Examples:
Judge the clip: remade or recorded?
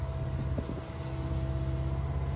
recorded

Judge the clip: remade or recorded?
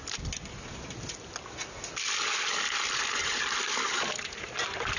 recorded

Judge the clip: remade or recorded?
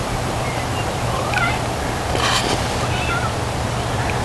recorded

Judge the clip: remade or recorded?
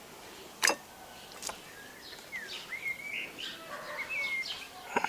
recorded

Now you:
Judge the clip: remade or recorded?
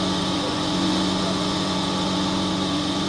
remade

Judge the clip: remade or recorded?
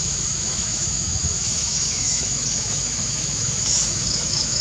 remade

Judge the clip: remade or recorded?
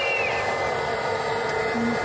recorded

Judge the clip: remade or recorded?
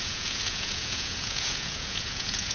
remade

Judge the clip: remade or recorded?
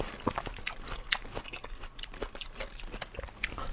recorded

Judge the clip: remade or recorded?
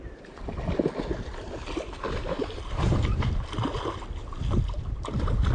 recorded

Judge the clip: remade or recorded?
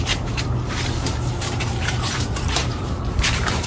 remade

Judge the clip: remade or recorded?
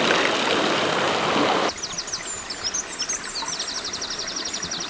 recorded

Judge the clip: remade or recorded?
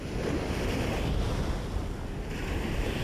recorded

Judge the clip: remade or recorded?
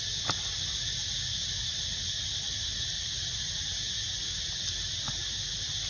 recorded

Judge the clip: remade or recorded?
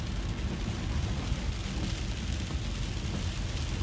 recorded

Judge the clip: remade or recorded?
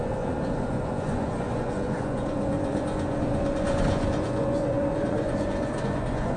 remade